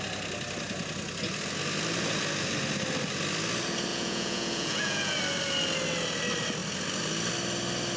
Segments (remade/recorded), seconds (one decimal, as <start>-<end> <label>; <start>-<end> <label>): 0.0-3.9 recorded; 3.9-5.2 remade; 5.2-8.0 recorded